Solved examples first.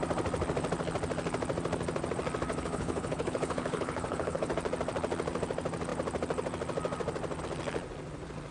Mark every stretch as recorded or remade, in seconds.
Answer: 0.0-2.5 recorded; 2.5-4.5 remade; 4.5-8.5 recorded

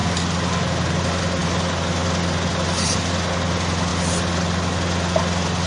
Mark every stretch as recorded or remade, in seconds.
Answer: 0.0-5.7 recorded